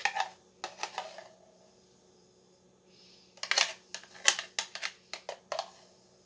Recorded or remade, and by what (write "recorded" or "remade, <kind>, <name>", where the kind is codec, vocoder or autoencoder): recorded